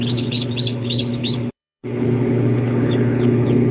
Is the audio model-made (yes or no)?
yes